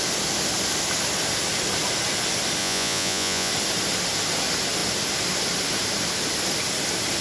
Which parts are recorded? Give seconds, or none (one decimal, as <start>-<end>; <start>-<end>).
0.0-2.6; 3.5-7.2